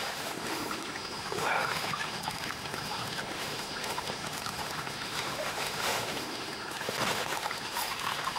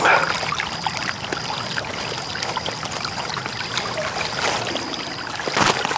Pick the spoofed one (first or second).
first